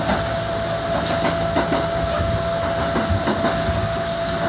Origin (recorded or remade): recorded